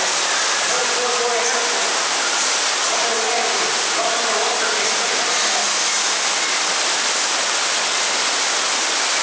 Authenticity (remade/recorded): recorded